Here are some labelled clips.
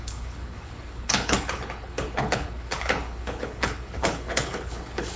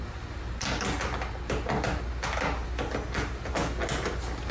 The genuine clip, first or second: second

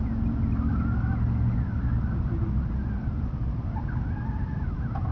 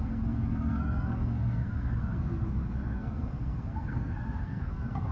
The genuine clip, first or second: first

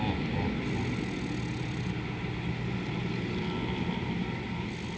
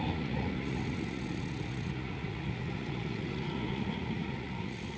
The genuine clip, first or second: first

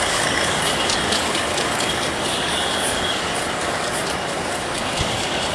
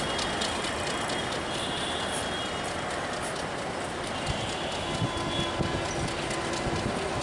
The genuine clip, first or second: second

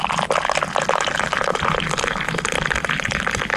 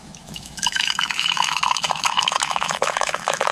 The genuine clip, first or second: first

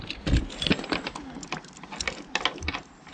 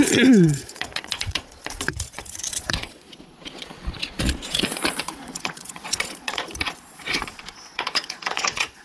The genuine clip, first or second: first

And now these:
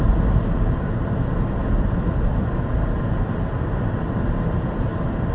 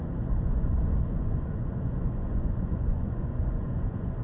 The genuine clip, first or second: first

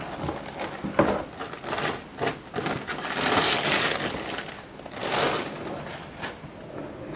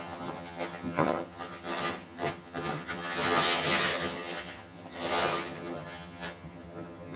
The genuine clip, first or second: first